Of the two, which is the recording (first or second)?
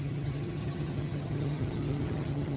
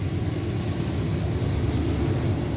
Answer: second